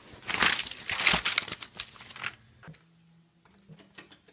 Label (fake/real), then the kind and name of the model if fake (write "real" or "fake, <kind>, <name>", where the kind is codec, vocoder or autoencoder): real